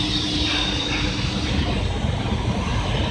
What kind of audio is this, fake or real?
real